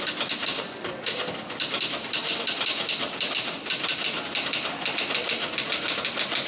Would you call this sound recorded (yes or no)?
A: yes